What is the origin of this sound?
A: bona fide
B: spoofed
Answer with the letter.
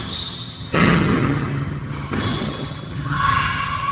B